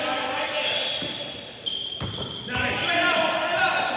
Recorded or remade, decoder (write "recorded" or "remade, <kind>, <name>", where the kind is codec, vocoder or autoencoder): recorded